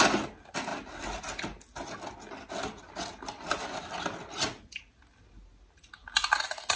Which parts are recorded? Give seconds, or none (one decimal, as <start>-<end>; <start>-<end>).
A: 0.0-6.8